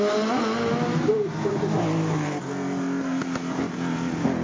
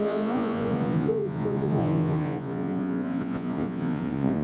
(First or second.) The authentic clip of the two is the first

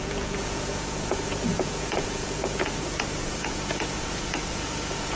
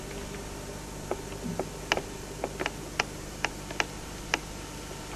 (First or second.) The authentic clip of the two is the second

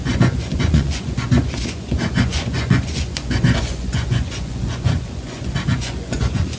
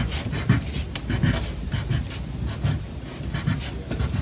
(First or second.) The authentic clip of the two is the second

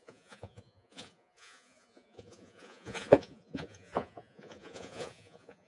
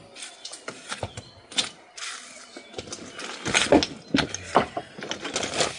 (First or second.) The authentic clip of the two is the second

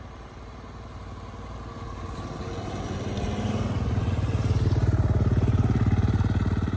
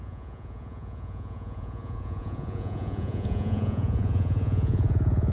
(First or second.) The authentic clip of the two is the first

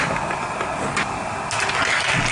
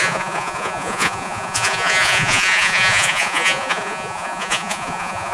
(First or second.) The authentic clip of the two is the first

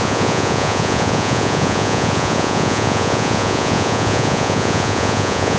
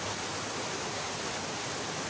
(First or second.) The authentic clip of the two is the second